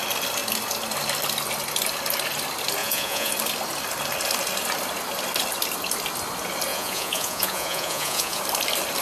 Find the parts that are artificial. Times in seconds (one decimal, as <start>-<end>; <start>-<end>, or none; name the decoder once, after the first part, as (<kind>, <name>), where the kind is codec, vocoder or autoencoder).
2.8-3.3 (vocoder, Vocos); 6.7-8.4